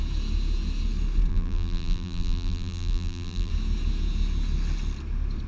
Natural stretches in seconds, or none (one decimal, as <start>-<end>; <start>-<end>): 0.0-1.3; 3.5-5.5